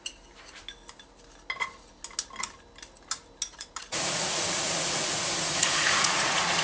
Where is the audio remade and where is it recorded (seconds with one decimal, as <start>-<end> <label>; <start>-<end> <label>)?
0.0-3.5 recorded; 3.5-6.6 remade